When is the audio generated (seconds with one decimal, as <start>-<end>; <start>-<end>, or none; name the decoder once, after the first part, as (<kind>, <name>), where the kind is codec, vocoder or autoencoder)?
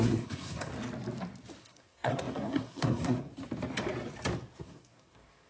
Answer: 0.0-0.7 (codec, SNAC); 1.6-3.3; 4.6-5.5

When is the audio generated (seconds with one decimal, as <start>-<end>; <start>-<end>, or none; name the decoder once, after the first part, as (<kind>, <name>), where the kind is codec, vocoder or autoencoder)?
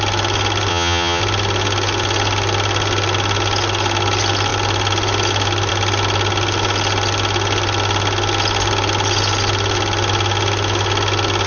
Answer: 0.7-1.2 (vocoder, HiFi-GAN)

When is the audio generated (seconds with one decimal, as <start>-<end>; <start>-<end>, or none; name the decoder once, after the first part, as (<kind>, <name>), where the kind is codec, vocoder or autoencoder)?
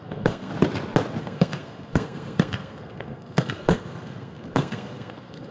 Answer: 0.0-0.5 (codec, SNAC); 1.2-5.5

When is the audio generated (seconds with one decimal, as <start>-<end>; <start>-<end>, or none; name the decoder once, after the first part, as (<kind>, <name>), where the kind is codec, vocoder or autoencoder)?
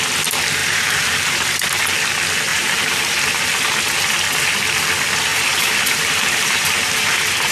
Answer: 0.6-1.8 (vocoder, BigVGAN v2); 2.5-3.3; 5.3-7.5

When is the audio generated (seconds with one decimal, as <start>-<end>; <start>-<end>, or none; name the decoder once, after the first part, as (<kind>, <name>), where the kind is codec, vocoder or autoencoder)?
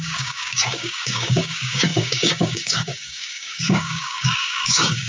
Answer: 0.0-5.1 (codec, DAC)